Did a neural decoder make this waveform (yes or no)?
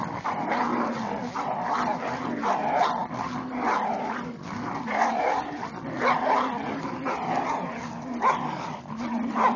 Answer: no